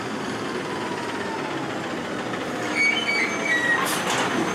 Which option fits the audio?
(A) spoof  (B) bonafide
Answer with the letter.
B